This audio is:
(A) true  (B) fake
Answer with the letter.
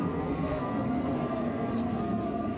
B